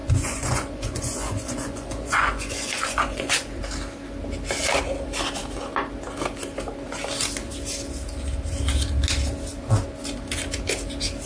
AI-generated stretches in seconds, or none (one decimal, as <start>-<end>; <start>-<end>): 0.0-3.6